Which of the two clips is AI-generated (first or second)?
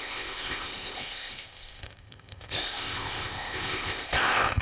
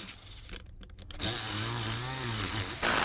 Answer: first